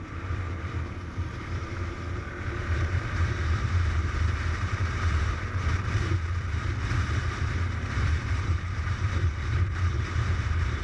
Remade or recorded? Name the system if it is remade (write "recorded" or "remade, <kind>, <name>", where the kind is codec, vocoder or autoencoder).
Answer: remade, vocoder, BigVGAN v2